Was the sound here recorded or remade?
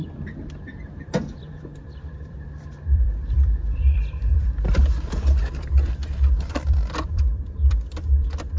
remade